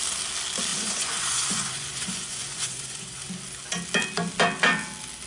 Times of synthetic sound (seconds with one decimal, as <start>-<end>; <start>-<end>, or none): 0.7-3.3